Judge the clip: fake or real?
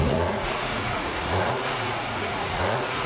fake